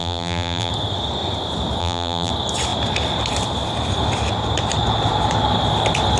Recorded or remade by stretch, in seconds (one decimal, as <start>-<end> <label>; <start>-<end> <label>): 0.0-0.7 remade; 0.7-1.8 recorded; 1.8-2.3 remade; 2.3-6.2 recorded